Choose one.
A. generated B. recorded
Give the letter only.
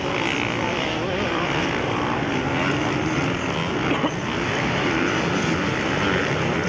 B